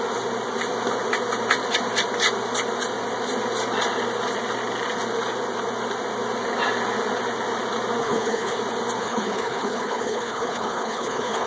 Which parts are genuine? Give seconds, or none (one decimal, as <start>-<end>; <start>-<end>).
0.0-8.0; 8.6-9.0